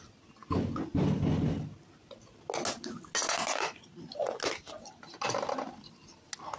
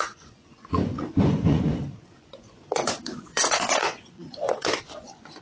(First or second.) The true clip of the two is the first